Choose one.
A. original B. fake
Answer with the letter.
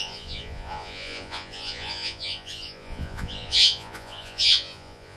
B